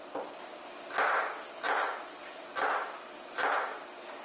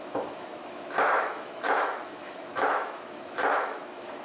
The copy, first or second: second